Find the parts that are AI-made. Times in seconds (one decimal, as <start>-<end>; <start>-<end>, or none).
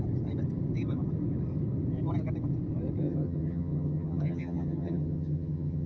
3.0-5.9